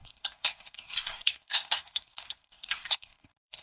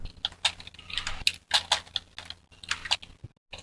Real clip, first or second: second